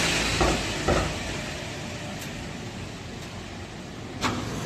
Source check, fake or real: real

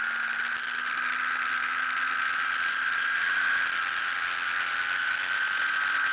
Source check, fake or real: real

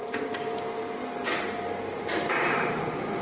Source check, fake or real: real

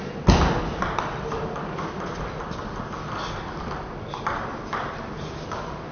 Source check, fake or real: real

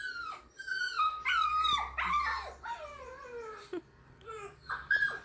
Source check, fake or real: real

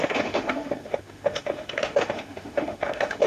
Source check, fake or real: fake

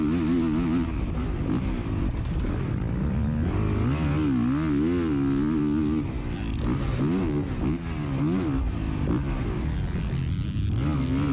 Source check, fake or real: real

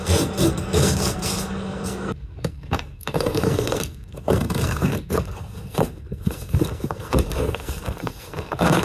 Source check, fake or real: fake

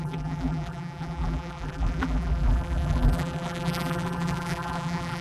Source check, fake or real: fake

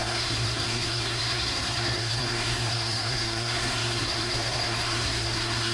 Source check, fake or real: fake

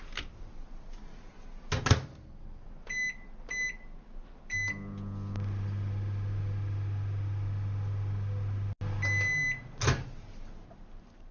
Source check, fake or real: real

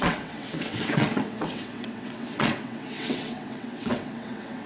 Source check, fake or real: fake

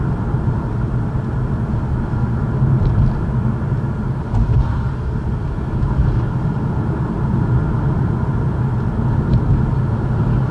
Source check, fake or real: real